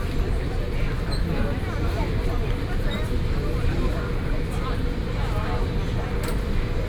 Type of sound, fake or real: real